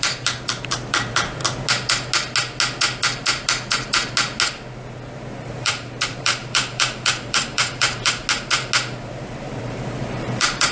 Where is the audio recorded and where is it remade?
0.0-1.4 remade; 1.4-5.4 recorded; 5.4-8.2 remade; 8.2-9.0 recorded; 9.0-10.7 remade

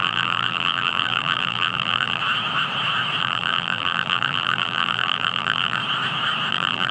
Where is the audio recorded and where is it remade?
0.0-2.2 remade; 2.2-3.2 recorded; 3.2-5.8 remade; 5.8-6.5 recorded; 6.5-6.9 remade

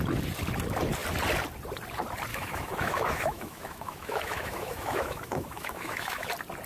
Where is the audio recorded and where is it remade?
0.0-2.3 recorded; 2.3-6.3 remade; 6.3-6.7 recorded

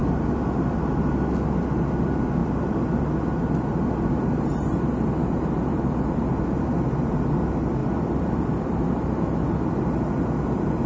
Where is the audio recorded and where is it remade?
0.0-2.4 recorded; 2.4-3.0 remade; 3.0-7.8 recorded; 7.8-8.8 remade; 8.8-10.9 recorded

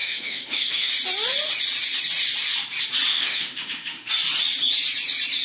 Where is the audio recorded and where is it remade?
0.0-0.9 remade; 0.9-3.1 recorded; 3.1-4.1 remade; 4.1-5.4 recorded

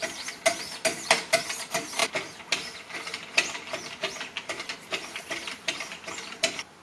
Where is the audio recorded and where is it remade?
0.0-6.8 recorded